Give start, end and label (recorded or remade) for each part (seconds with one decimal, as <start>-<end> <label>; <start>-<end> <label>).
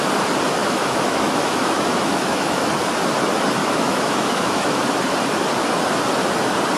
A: 0.0-0.6 recorded; 0.6-2.7 remade; 2.7-3.6 recorded; 3.6-4.8 remade; 4.8-6.8 recorded